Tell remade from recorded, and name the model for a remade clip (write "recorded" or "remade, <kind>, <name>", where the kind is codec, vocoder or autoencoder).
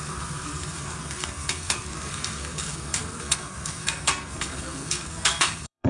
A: remade, codec, SNAC